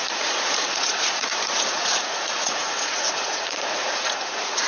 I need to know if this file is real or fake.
fake